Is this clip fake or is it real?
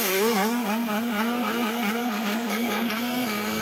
fake